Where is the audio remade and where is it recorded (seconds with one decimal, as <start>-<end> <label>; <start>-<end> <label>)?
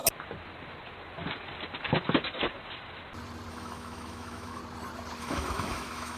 0.0-3.5 recorded; 3.5-4.6 remade; 4.6-5.2 recorded; 5.2-6.2 remade